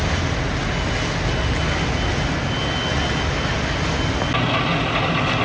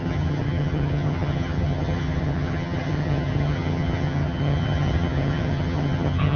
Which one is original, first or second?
first